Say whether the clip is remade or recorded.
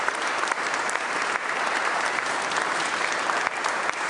remade